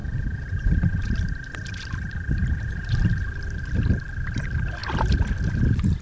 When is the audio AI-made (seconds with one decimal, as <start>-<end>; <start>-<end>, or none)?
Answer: 0.0-6.0